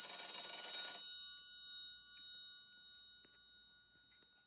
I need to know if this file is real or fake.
real